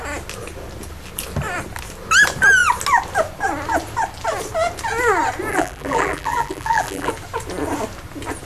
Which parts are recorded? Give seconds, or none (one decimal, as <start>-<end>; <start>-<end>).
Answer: 0.0-5.5; 7.1-8.5